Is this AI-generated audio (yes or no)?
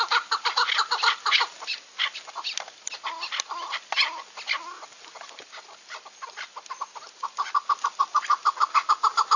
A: no